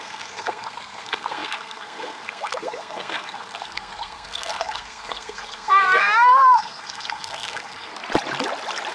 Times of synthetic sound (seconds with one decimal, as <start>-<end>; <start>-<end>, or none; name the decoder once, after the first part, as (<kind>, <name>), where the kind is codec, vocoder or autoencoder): 0.0-7.9 (codec, SNAC)